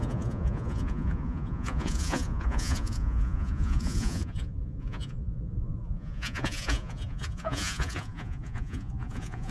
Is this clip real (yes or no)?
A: no